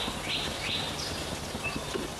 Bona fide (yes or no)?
yes